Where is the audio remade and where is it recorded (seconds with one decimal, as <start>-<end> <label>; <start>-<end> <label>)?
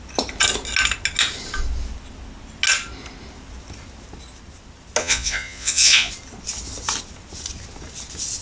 0.0-5.0 recorded; 5.0-6.1 remade; 6.1-8.4 recorded